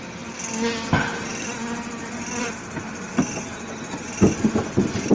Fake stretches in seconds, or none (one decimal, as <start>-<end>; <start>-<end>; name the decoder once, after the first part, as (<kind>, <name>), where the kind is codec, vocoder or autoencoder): none